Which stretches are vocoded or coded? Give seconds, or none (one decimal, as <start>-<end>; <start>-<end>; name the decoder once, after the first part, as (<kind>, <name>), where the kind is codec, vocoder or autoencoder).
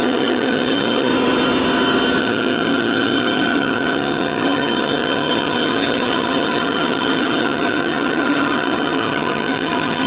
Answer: 0.0-1.1 (vocoder, HiFi-GAN); 2.2-10.1